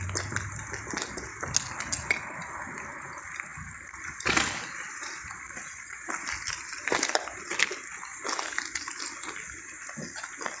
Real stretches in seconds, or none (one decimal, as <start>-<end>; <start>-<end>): 0.0-10.6